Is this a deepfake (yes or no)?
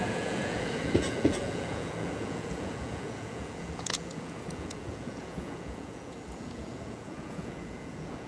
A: yes